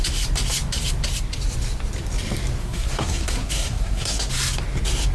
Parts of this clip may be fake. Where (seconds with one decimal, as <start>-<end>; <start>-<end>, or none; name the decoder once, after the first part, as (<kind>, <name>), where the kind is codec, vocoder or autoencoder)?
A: 2.6-4.3 (codec, SNAC)